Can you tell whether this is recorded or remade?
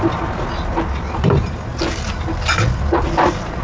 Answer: recorded